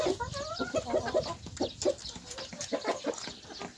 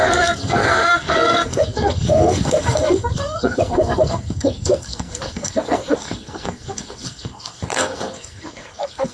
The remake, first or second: second